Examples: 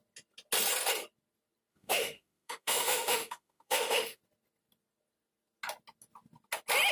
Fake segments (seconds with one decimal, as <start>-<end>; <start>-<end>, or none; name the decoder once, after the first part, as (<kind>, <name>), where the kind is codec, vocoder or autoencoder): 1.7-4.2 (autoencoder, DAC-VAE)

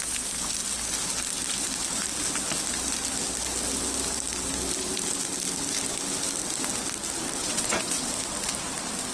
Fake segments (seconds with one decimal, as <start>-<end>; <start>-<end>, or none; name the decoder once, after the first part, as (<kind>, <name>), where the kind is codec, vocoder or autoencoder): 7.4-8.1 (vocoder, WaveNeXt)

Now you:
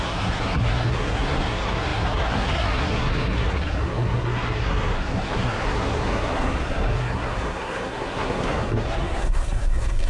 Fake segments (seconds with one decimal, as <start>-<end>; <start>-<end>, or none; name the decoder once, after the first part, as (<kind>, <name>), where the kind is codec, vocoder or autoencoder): 0.0-10.1 (codec, SNAC)

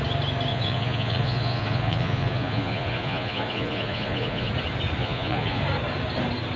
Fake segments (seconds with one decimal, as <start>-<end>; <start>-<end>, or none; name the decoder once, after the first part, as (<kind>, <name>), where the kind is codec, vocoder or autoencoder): 0.5-4.5 (vocoder, Vocos); 5.0-5.6